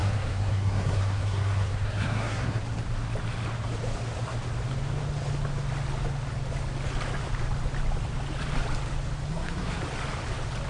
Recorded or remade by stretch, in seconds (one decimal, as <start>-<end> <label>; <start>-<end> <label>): 0.0-2.6 remade; 2.6-9.3 recorded; 9.3-9.8 remade; 9.8-10.7 recorded